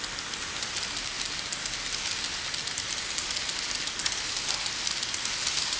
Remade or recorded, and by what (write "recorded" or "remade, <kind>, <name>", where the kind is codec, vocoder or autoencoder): recorded